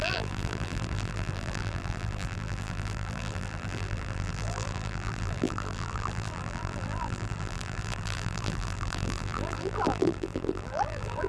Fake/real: fake